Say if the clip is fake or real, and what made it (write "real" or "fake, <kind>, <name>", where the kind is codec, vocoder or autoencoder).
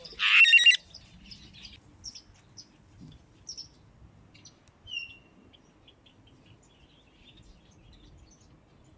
real